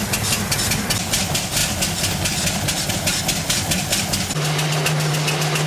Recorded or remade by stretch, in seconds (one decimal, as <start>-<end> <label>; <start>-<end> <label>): 0.0-5.7 recorded